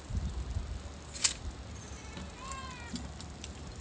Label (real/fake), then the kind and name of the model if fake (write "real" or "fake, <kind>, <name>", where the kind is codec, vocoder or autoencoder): real